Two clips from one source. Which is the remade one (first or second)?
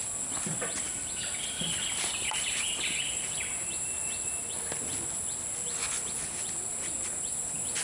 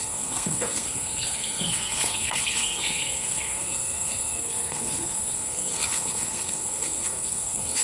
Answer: second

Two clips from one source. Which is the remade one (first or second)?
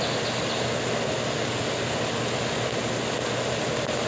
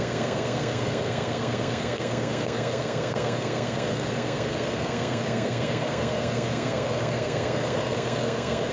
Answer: second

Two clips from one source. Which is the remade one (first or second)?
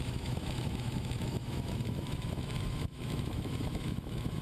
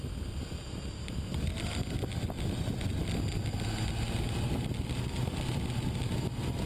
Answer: first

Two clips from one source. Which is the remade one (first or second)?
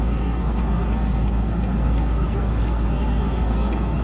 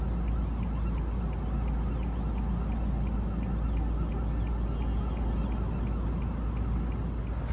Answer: first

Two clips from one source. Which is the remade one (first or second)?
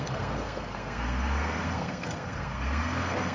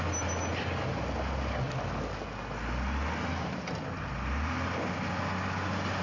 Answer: first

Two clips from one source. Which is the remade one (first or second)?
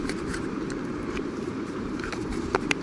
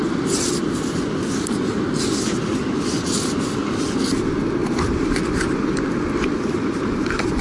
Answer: first